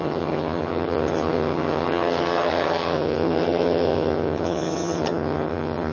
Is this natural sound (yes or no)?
no